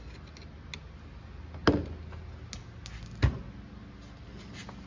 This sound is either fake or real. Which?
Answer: real